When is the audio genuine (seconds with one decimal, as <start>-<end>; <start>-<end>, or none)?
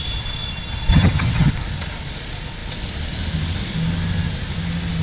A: 0.0-0.9; 1.5-5.0